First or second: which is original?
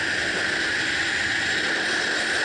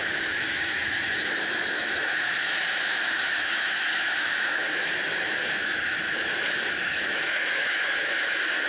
first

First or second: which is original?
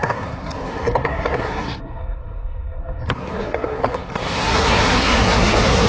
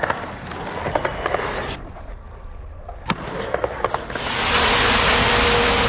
second